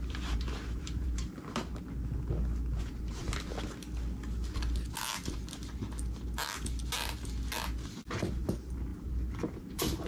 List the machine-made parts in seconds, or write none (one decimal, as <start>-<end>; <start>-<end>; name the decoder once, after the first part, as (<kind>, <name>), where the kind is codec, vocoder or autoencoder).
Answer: 0.0-1.7 (vocoder, BigVGAN v2); 2.8-3.2; 7.9-10.1